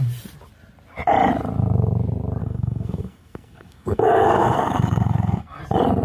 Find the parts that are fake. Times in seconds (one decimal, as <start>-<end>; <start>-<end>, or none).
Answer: 2.4-5.6